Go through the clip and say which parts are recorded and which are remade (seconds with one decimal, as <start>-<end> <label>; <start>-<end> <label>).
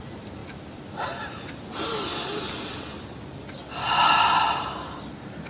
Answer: 0.0-5.5 recorded